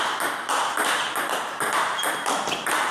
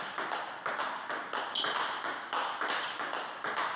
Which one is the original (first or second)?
second